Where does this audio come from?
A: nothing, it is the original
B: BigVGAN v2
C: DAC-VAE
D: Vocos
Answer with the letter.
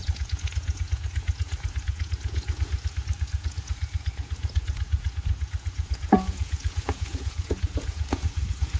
D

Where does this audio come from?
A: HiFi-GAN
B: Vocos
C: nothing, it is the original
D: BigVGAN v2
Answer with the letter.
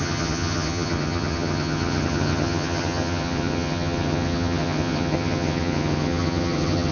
A